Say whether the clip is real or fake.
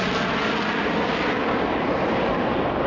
real